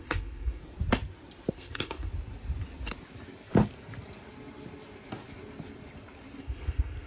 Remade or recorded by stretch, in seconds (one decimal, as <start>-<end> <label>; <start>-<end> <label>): 0.0-0.6 remade; 0.6-1.5 recorded; 1.5-2.1 remade; 2.1-6.4 recorded; 6.4-7.1 remade